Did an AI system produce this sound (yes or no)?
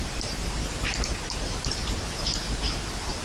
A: yes